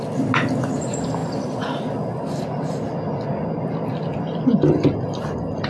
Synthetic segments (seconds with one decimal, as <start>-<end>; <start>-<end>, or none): none